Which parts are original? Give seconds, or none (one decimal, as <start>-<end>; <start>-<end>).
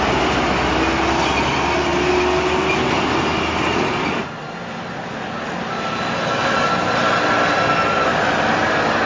0.0-9.1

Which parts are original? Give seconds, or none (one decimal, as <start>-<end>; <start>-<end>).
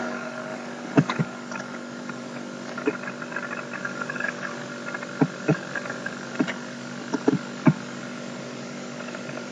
2.9-3.8; 4.7-5.4